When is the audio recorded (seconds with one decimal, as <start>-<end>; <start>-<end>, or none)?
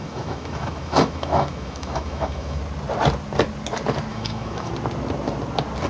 2.6-4.1; 4.7-5.9